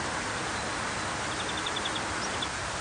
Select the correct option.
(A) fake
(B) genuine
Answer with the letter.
B